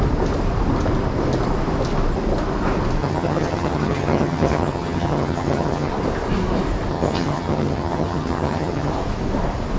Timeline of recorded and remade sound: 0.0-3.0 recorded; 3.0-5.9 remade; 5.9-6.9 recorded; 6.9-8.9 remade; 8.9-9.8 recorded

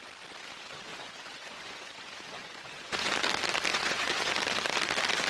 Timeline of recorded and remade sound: 0.0-0.9 recorded; 0.9-3.1 remade; 3.1-3.7 recorded; 3.7-4.3 remade; 4.3-5.3 recorded

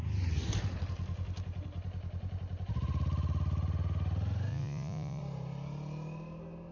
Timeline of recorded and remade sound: 0.0-4.5 recorded; 4.5-5.2 remade; 5.2-6.7 recorded

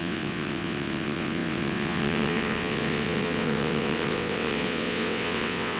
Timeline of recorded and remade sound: 0.0-5.8 remade

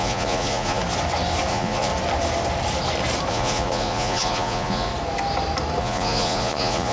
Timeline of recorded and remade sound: 0.0-0.8 remade; 0.8-1.5 recorded; 1.5-1.9 remade; 1.9-3.3 recorded; 3.3-4.9 remade; 4.9-5.8 recorded; 5.8-6.9 remade

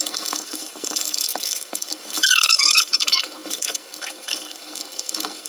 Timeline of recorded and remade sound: 0.0-5.5 remade

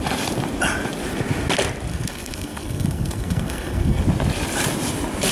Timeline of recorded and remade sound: 0.0-1.9 recorded; 1.9-4.0 remade; 4.0-5.3 recorded

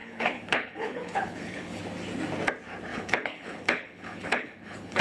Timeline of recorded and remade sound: 0.0-1.8 remade; 1.8-2.9 recorded; 2.9-5.0 remade